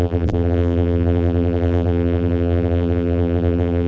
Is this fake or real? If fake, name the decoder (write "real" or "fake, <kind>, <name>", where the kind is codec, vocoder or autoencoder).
fake, vocoder, BigVGAN v2